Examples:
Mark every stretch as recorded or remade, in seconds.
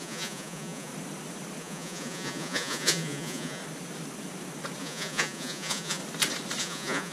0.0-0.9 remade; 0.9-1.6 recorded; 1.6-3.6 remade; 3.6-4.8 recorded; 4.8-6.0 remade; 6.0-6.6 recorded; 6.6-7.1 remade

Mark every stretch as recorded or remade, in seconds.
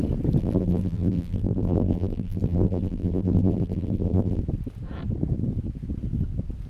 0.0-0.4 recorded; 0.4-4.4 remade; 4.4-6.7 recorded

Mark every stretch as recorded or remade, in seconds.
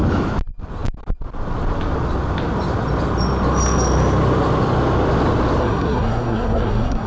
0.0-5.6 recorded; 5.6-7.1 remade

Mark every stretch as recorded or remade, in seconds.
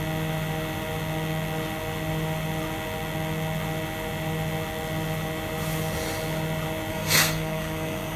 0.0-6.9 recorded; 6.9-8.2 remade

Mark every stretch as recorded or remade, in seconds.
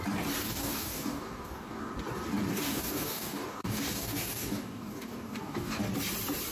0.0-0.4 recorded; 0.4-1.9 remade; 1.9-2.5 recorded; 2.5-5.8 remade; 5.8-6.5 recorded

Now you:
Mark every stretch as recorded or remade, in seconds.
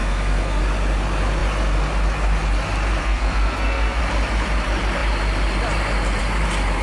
0.0-0.6 remade; 0.6-3.0 recorded; 3.0-4.0 remade; 4.0-6.8 recorded